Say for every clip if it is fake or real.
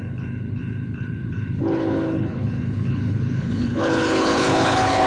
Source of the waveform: fake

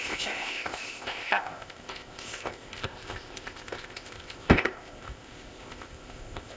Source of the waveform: fake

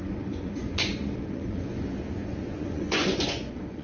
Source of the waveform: fake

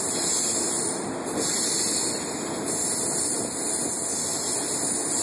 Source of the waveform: real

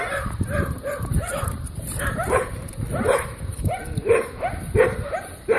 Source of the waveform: fake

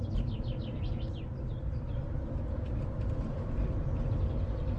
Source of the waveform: real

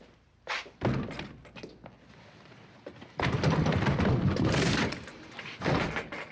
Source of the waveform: real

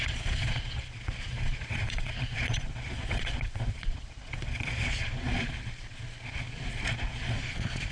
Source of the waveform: fake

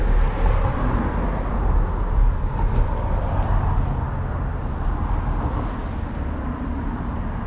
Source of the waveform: real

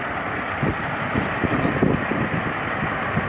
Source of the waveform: real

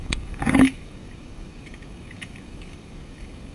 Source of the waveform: fake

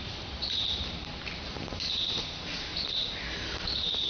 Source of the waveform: real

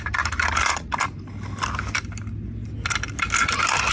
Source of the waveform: real